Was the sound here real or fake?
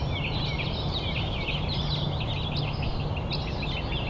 real